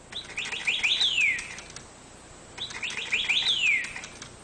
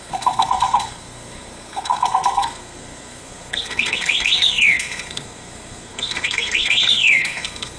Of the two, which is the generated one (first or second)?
second